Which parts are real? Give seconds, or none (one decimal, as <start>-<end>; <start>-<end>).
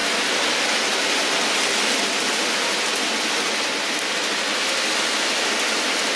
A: 0.0-6.2